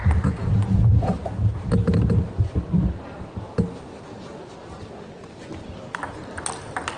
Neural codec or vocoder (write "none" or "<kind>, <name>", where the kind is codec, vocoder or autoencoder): none